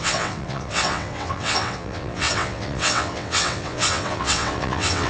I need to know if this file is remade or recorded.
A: remade